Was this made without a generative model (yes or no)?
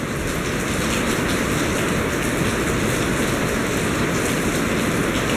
yes